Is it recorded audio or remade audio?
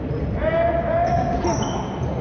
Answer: recorded